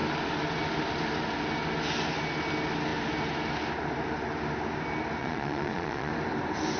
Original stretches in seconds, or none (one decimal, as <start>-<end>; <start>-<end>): 0.0-5.2; 6.1-6.8